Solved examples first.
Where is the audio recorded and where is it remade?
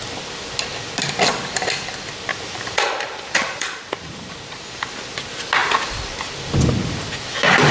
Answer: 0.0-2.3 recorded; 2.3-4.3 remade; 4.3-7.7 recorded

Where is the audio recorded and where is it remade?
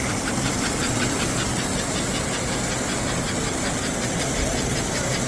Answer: 0.0-1.5 remade; 1.5-4.2 recorded; 4.2-5.3 remade